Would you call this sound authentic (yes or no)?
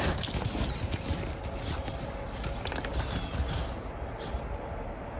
yes